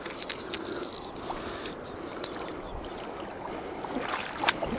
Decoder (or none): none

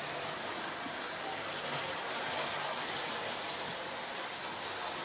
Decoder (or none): none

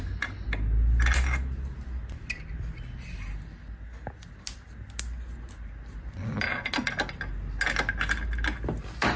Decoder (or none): none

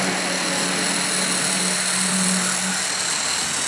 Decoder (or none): none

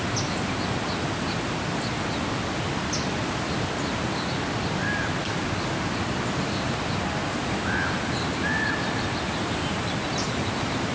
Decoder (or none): none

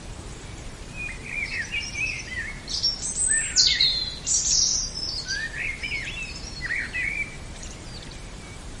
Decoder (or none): vocoder, BigVGAN v2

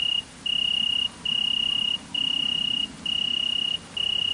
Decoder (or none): none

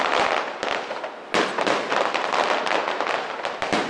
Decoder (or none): none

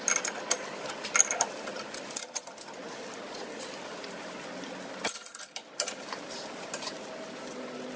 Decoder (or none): none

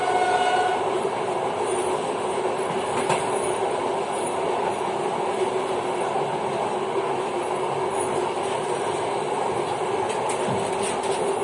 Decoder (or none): none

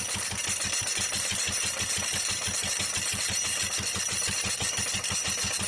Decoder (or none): none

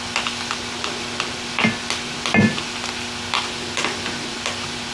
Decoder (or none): none